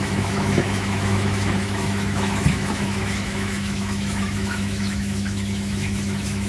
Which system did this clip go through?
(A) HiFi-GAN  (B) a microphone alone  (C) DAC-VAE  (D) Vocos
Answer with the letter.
C